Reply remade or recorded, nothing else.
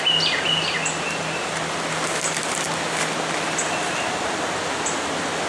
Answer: recorded